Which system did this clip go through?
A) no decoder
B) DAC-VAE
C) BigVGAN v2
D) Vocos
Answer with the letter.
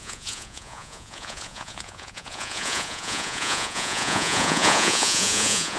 D